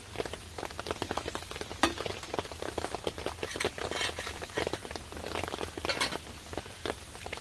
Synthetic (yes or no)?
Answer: no